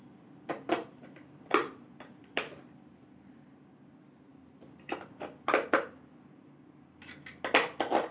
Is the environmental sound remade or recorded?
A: recorded